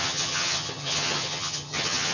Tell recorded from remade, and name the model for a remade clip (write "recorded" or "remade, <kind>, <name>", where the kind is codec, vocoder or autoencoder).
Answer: remade, vocoder, HiFi-GAN